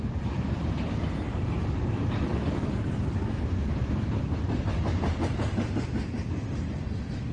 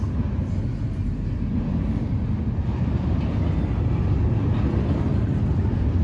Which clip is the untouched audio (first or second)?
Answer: second